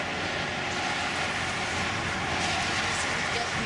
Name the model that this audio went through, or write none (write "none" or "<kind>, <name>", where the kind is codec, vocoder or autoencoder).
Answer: none